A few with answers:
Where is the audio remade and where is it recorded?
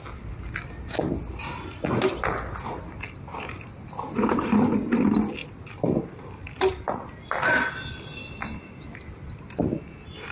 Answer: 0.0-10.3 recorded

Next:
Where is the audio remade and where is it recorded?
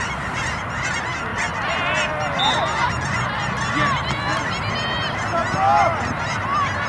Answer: 0.0-1.3 remade; 1.3-4.1 recorded; 4.1-5.4 remade; 5.4-6.1 recorded; 6.1-6.9 remade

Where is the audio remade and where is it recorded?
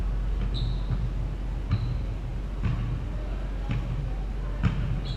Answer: 0.0-5.2 recorded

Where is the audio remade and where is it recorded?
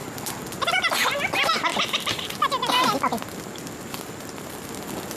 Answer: 0.0-1.7 recorded; 1.7-4.7 remade; 4.7-5.2 recorded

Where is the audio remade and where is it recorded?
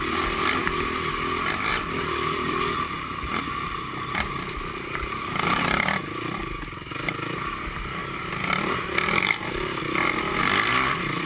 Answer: 0.0-0.6 recorded; 0.6-1.1 remade; 1.1-1.7 recorded; 1.7-5.6 remade; 5.6-8.0 recorded; 8.0-9.8 remade; 9.8-11.3 recorded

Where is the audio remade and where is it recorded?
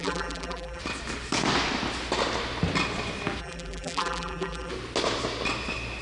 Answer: 0.0-0.8 remade; 0.8-3.4 recorded; 3.4-4.7 remade; 4.7-6.0 recorded